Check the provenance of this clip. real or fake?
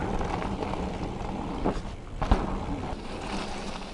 real